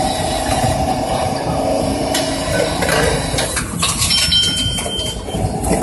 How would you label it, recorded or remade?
remade